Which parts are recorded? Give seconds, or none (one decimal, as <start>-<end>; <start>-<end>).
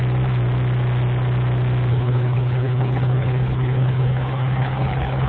0.0-1.9